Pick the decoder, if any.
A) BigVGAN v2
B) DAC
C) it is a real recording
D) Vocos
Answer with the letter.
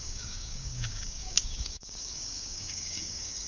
B